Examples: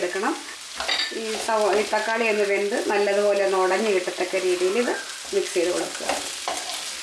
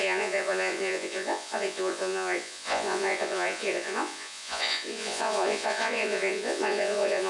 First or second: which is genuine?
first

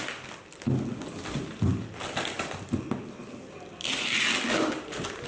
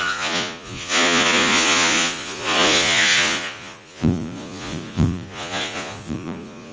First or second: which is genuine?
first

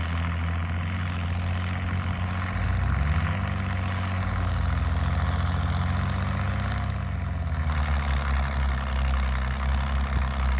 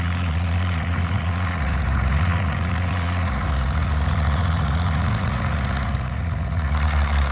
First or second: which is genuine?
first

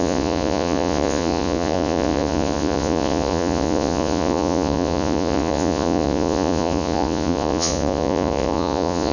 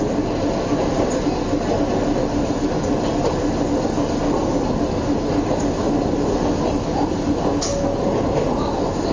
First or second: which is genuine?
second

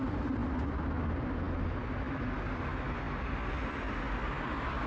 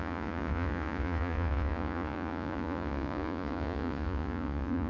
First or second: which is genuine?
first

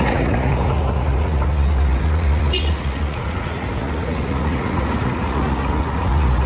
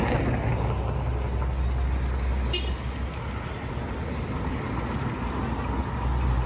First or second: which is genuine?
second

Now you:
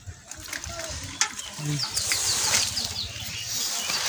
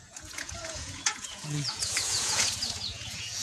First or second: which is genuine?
first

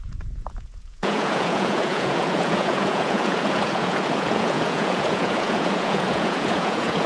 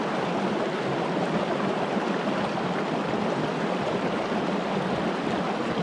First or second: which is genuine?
second